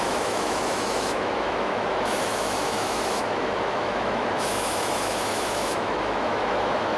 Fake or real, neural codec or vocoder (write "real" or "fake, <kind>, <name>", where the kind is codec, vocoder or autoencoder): fake, autoencoder, DAC-VAE